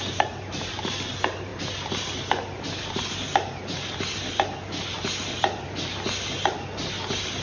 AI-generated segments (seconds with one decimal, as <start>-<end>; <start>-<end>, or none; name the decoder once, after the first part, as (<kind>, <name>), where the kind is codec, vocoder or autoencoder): none